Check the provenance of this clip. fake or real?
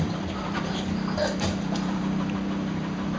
fake